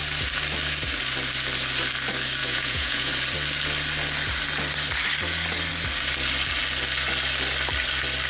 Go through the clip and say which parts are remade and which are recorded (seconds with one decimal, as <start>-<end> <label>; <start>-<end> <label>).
0.0-2.4 recorded; 2.4-3.1 remade; 3.1-8.3 recorded